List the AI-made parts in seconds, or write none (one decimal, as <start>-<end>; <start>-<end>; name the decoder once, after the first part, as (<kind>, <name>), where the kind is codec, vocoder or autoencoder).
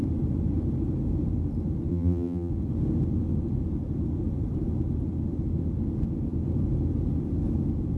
1.9-2.5 (vocoder, BigVGAN v2)